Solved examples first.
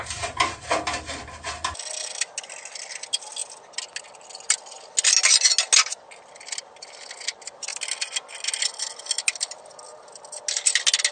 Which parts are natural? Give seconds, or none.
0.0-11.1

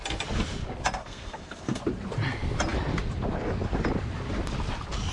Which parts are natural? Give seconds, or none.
0.0-1.0; 1.8-5.1